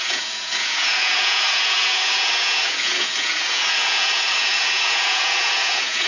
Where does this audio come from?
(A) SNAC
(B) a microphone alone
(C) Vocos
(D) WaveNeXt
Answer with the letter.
C